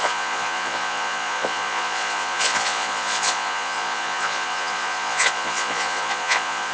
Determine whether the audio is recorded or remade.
remade